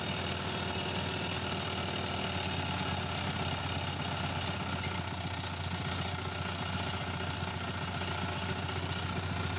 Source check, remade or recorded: recorded